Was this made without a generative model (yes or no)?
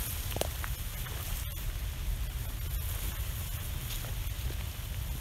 yes